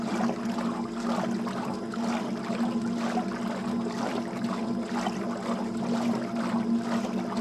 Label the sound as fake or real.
real